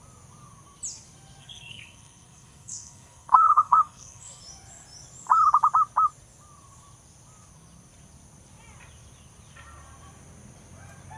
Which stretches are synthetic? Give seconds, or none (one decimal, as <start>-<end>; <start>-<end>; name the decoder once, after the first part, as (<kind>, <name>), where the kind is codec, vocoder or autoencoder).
1.4-4.4 (codec, SNAC)